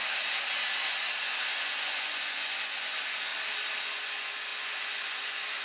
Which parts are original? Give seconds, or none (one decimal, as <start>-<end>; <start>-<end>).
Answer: 0.0-1.2; 3.3-3.8